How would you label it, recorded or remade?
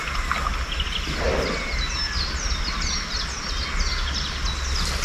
recorded